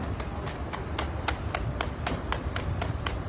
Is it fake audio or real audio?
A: real